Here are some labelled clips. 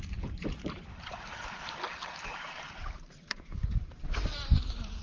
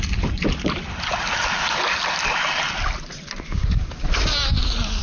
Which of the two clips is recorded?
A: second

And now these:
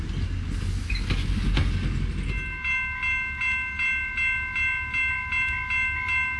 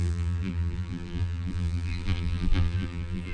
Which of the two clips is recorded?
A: first